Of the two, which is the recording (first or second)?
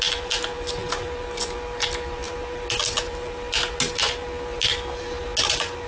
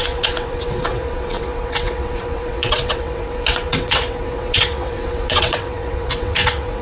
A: first